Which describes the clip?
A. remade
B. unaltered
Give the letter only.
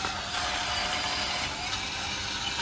B